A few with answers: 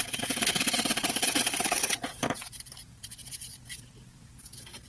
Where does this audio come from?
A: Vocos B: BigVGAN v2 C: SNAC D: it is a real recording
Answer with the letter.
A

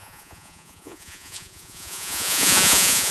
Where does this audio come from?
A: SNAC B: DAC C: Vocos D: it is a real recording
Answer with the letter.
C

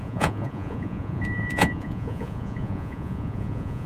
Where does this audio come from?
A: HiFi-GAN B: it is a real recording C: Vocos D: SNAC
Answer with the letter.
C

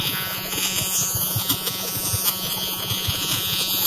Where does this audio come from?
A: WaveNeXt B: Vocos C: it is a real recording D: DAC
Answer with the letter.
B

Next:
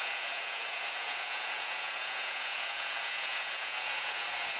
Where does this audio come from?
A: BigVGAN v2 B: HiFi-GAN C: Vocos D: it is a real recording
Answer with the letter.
C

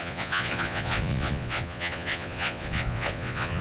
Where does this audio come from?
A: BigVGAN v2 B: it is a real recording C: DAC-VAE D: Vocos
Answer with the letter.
D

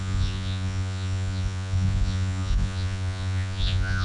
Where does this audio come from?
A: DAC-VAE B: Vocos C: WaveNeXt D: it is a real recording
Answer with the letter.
B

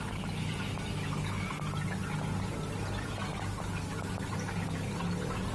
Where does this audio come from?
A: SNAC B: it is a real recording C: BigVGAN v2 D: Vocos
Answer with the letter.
B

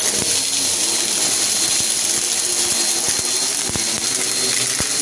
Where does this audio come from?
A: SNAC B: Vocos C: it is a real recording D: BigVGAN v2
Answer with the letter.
C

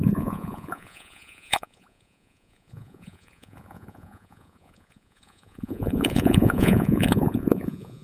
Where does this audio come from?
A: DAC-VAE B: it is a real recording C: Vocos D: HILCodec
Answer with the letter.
C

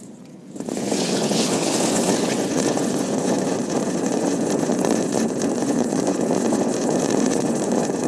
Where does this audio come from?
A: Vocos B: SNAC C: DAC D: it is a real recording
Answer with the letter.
A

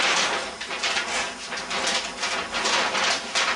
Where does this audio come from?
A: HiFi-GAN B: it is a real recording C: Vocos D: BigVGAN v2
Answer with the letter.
B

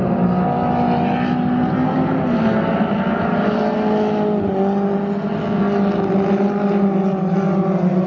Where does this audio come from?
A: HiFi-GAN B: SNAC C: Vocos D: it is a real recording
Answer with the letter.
D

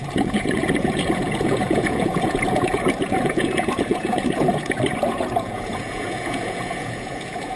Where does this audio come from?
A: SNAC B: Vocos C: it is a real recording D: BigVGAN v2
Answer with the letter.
B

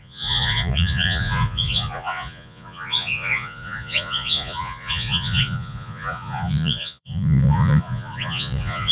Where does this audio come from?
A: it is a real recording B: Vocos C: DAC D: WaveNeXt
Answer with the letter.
B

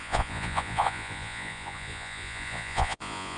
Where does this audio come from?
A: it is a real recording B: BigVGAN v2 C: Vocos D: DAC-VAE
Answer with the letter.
C